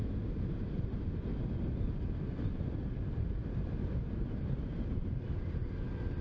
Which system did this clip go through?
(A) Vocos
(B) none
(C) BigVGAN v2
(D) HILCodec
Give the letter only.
B